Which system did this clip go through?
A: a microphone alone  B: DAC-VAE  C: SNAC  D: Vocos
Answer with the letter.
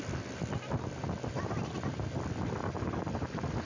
A